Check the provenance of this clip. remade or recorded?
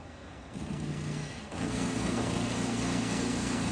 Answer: remade